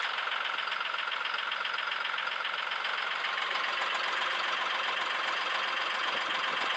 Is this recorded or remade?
recorded